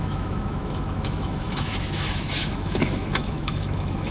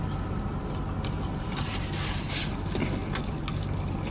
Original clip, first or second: second